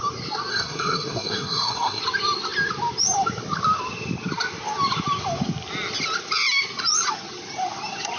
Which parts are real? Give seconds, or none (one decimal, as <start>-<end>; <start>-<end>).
0.0-0.5; 2.0-8.2